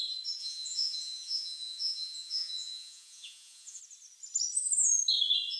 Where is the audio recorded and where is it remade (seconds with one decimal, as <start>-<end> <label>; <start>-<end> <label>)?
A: 0.0-0.4 recorded; 0.4-3.8 remade; 3.8-5.6 recorded